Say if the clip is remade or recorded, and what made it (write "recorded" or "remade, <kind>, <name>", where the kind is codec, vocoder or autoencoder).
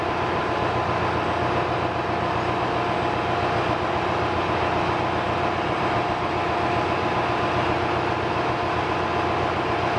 recorded